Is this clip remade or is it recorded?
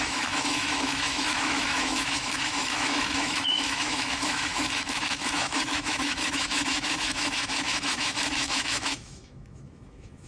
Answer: remade